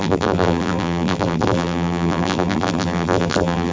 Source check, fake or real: fake